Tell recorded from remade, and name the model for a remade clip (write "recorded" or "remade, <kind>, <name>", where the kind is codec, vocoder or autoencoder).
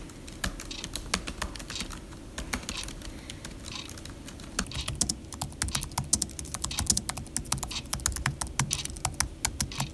recorded